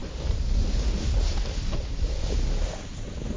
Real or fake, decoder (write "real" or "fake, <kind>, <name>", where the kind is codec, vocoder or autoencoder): real